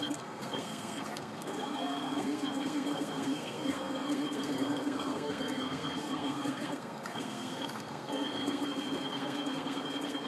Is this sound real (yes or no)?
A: no